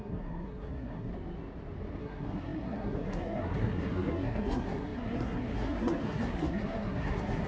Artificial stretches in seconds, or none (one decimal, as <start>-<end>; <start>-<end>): 0.0-1.1; 2.0-7.5